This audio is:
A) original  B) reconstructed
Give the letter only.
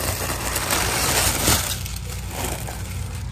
A